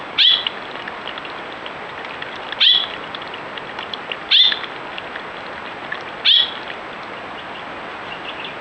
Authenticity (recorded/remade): recorded